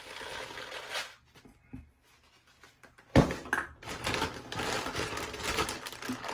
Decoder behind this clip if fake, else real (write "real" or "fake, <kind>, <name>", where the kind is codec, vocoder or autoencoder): real